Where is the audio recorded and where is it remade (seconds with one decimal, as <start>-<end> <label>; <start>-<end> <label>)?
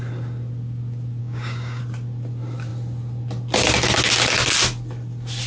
0.0-1.2 recorded; 1.2-1.8 remade; 1.8-5.5 recorded